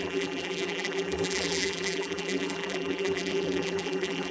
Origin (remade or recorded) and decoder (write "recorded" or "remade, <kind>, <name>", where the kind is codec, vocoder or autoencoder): remade, vocoder, BigVGAN v2